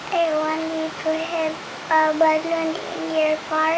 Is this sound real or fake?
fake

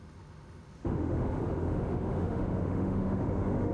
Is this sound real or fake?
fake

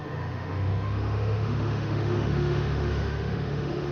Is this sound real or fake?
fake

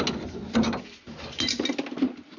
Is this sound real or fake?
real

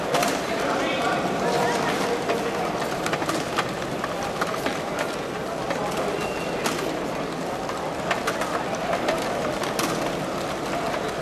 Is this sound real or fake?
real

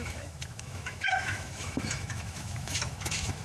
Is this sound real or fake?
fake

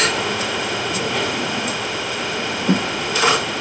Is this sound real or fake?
fake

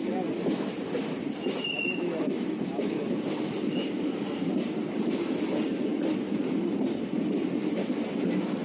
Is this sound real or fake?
real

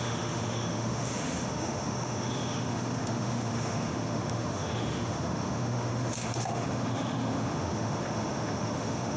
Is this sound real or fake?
fake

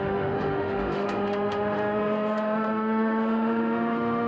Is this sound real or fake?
fake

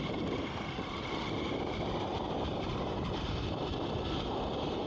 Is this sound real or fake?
real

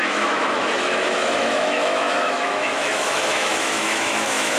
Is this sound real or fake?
fake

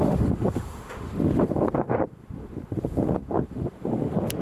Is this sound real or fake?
fake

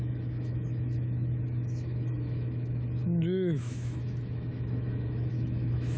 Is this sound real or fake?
fake